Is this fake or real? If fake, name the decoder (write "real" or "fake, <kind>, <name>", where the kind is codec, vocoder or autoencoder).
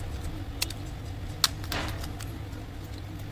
real